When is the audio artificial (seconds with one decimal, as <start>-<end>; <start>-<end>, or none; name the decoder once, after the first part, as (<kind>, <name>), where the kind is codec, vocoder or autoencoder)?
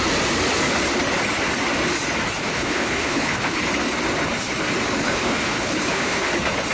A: 2.4-3.6 (codec, HILCodec); 5.0-6.3